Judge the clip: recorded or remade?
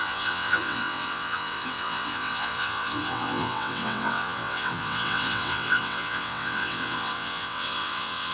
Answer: remade